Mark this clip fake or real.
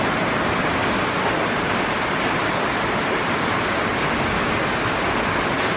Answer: real